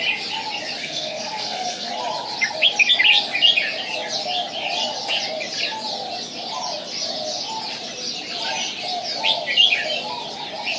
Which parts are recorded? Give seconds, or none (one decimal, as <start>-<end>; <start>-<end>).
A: 0.0-0.8; 1.9-10.8